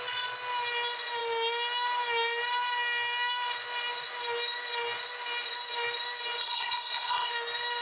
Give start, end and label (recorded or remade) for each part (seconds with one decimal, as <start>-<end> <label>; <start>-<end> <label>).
0.0-6.4 recorded; 6.4-7.3 remade; 7.3-7.8 recorded